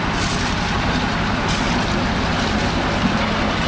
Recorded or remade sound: recorded